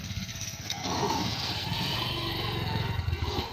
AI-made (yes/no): yes